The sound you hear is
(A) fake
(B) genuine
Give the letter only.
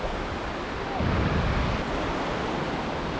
B